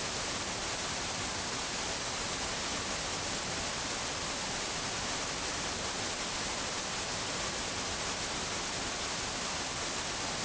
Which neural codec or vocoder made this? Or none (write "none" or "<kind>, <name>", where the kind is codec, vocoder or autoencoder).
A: none